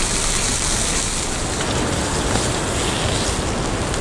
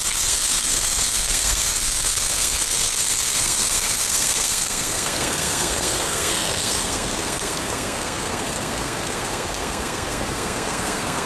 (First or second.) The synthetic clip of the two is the second